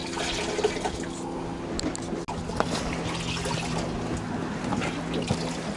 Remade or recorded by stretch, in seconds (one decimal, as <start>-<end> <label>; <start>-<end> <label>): 0.0-5.8 recorded